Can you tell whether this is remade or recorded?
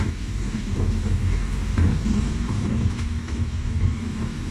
remade